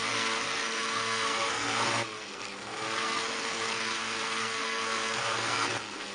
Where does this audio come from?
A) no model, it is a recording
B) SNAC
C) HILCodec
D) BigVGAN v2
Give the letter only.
B